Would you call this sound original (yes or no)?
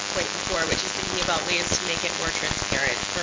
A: yes